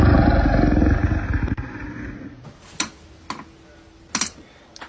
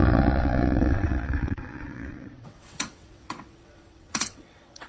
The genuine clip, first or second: first